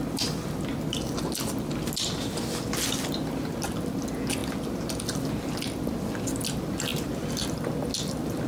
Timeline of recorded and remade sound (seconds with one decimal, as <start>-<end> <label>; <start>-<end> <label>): 0.0-8.5 recorded